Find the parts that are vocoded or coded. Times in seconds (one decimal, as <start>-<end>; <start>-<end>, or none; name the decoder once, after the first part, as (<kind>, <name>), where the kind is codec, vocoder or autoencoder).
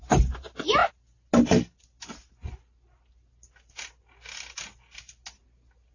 none